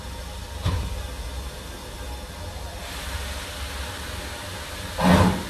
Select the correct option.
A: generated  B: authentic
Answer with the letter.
B